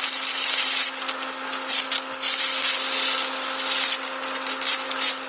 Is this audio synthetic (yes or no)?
no